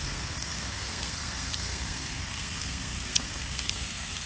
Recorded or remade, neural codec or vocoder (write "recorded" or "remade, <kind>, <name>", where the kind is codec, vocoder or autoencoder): remade, codec, SNAC